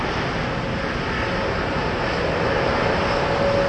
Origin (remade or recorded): recorded